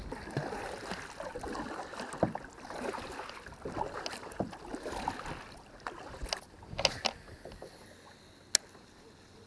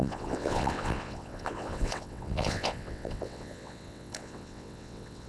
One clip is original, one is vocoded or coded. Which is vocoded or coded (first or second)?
second